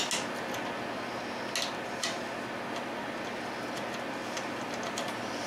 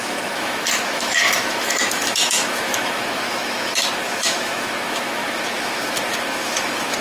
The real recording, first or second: first